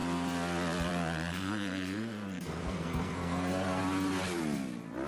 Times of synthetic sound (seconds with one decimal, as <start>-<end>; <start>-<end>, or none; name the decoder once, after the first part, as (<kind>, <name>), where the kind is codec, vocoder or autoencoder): 1.3-3.8 (codec, SNAC)